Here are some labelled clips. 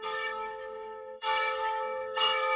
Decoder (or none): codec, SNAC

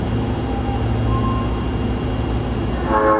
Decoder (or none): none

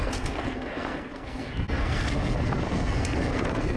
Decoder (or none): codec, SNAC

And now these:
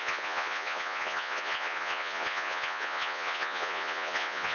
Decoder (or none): vocoder, Vocos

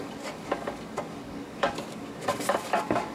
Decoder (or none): codec, DAC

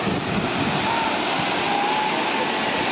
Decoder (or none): none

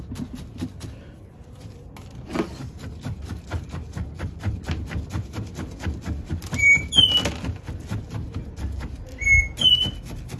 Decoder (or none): none